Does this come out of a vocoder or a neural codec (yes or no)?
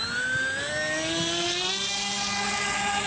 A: no